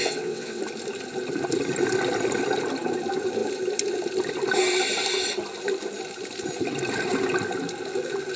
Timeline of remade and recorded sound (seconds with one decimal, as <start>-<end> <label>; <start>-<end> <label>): 0.0-0.6 remade; 0.6-8.4 recorded